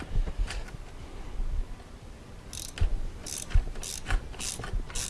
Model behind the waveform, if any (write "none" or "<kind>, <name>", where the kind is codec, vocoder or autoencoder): none